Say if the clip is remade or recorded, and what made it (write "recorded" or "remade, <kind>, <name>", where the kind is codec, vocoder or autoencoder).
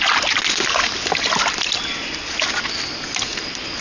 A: recorded